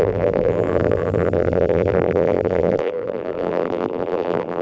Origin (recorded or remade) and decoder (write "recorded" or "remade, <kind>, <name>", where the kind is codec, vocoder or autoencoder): remade, vocoder, BigVGAN v2